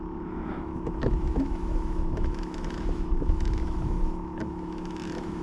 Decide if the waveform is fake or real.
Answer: fake